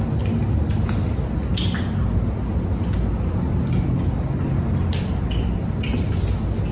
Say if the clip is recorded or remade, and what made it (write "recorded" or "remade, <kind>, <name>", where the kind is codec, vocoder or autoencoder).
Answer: recorded